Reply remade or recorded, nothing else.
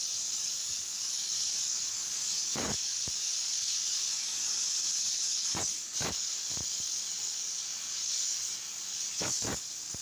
remade